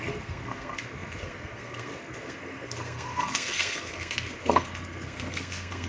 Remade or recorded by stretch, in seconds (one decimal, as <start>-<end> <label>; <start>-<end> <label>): 0.0-5.9 remade